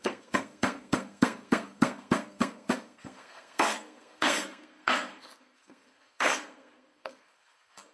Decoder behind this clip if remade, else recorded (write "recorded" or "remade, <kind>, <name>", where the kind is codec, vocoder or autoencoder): remade, codec, SNAC